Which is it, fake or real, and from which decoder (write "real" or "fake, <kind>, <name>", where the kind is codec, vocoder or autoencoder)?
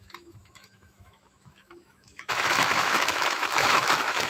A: fake, autoencoder, DAC-VAE